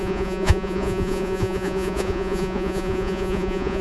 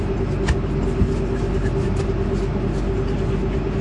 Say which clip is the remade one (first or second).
first